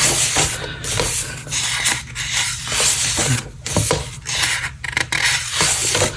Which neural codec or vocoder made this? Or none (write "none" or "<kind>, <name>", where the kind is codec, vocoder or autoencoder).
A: none